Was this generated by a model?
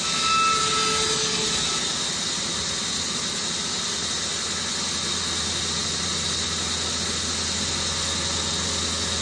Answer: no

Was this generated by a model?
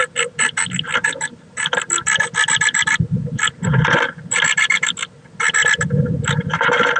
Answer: no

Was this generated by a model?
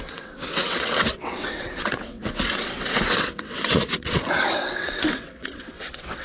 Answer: yes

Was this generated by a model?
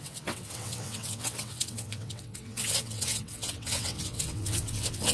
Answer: yes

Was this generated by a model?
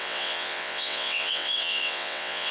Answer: yes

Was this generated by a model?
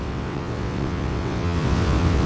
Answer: yes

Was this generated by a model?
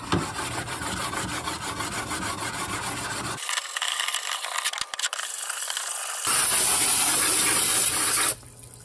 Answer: no